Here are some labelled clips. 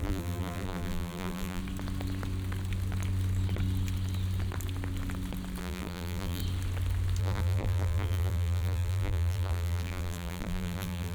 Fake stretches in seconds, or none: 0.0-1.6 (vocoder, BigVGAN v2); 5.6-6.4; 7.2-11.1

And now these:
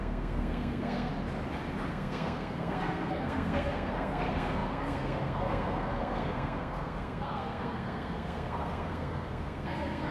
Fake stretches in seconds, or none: 0.0-1.1 (codec, SNAC); 1.9-10.1

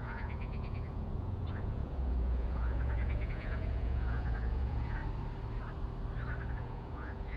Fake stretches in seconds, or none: 0.0-5.0 (vocoder, Vocos); 6.5-7.4

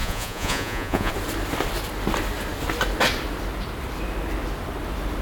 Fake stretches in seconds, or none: 0.0-1.1 (vocoder, Vocos)

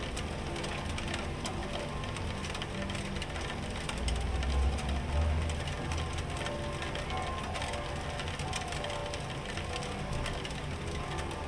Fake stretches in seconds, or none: none

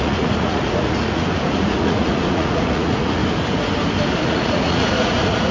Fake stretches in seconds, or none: 0.0-3.2 (vocoder, Vocos); 4.2-5.5

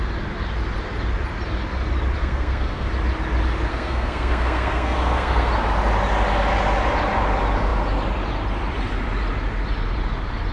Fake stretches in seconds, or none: 2.2-2.9 (codec, SNAC); 3.7-5.5

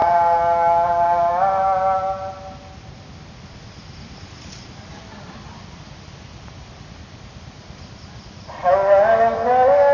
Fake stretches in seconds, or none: none